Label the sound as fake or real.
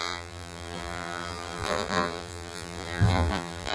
fake